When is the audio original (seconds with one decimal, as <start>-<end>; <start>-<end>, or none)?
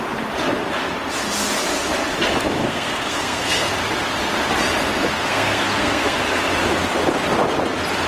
0.0-2.6; 3.7-5.1; 6.2-8.1